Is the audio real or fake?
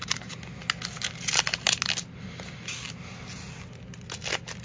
real